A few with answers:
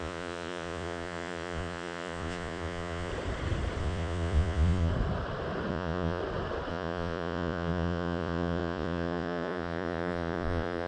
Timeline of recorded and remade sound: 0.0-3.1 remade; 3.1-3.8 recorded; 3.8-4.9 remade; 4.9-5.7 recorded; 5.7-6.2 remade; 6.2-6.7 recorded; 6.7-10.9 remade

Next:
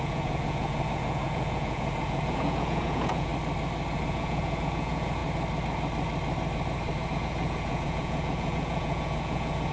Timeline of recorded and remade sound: 0.0-3.3 remade; 3.3-4.0 recorded; 4.0-5.2 remade; 5.2-7.1 recorded; 7.1-9.7 remade

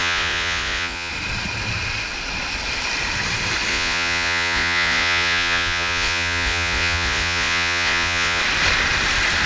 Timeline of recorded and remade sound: 0.0-1.1 remade; 1.1-3.7 recorded; 3.7-8.4 remade; 8.4-9.5 recorded

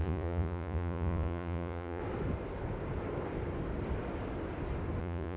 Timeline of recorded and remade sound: 0.0-2.0 remade; 2.0-5.0 recorded; 5.0-5.4 remade

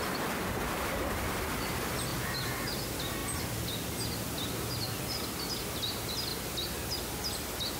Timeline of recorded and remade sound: 0.0-7.8 recorded

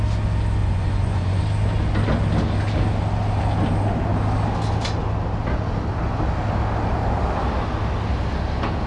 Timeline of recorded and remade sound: 0.0-0.6 recorded; 0.6-1.4 remade; 1.4-8.9 recorded